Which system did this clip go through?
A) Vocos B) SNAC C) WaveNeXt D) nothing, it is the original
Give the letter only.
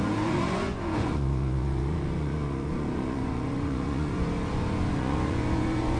A